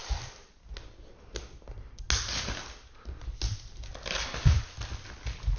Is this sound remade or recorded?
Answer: recorded